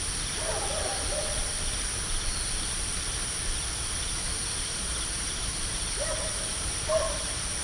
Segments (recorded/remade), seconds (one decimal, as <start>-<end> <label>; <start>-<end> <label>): 0.0-4.4 recorded; 4.4-7.0 remade; 7.0-7.6 recorded